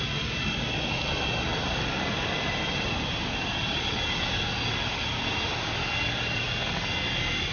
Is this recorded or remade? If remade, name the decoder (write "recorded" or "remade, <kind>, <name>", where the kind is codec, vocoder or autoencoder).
recorded